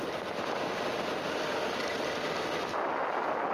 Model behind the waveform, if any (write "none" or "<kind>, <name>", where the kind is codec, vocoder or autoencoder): none